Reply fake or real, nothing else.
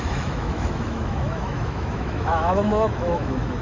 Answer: fake